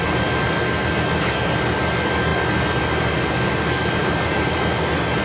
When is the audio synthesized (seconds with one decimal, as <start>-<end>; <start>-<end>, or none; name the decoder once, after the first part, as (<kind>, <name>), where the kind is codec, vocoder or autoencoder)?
none